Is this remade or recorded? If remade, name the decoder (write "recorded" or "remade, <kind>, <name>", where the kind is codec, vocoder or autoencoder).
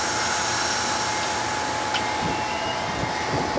recorded